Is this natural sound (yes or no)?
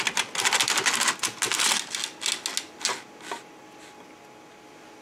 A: yes